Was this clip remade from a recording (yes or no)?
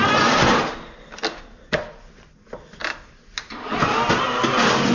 no